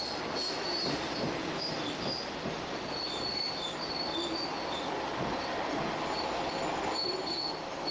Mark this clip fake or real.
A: real